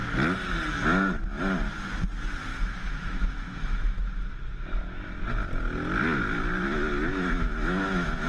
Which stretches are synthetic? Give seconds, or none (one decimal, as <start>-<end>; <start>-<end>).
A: 2.5-4.1; 7.1-8.3